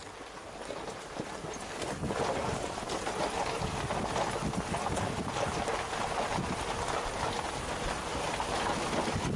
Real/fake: real